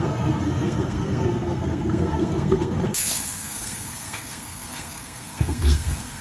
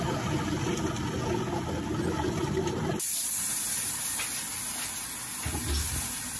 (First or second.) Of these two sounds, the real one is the second